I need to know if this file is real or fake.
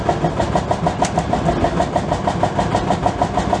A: real